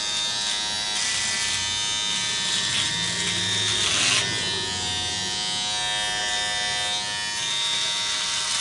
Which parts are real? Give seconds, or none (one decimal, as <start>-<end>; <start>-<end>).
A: 0.0-8.6